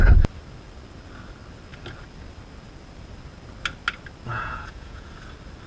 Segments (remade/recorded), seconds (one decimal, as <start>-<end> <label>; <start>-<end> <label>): 0.0-4.3 recorded; 4.3-5.1 remade; 5.1-5.7 recorded